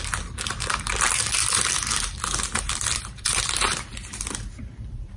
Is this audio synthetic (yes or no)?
yes